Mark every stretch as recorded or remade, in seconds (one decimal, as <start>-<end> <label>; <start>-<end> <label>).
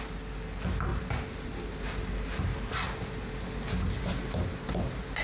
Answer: 0.0-5.2 recorded